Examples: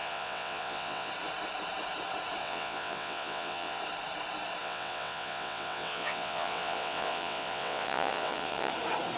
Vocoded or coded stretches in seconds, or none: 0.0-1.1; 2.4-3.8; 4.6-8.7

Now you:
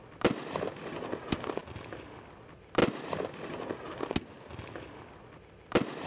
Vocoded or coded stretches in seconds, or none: none

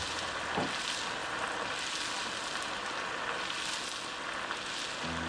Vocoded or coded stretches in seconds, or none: none